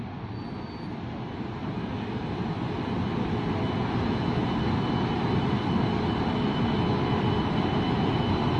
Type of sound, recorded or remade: recorded